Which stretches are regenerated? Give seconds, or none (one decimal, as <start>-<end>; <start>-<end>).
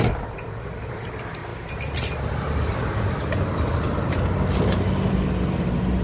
none